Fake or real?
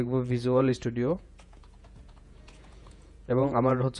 fake